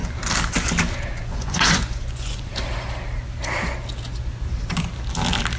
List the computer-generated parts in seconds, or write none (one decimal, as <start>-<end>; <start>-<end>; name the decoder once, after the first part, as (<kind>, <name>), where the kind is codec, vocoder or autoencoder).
1.1-2.5 (vocoder, Vocos)